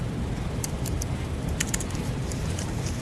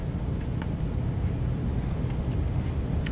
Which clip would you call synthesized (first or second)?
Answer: first